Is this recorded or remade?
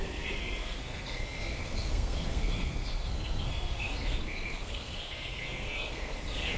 remade